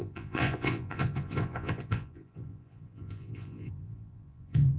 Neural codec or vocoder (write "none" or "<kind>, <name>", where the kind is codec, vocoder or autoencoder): vocoder, Vocos